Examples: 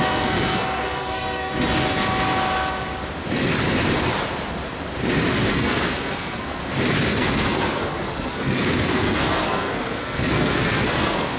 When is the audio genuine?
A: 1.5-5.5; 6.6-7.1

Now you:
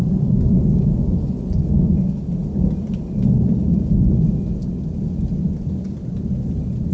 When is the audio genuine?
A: 0.0-6.9

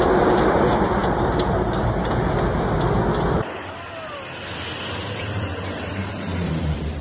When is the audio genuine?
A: 1.0-5.2

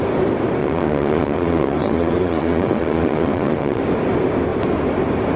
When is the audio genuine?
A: 0.0-0.6; 3.8-5.4

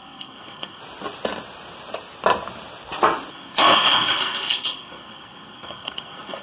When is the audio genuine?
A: 0.8-3.3